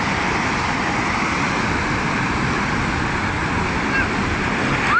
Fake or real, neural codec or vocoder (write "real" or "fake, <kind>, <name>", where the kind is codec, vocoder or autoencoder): real